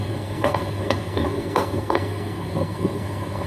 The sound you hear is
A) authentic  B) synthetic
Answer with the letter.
B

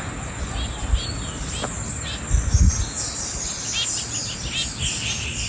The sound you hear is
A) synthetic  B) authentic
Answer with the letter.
B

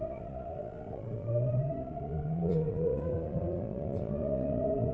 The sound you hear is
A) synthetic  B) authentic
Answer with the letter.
A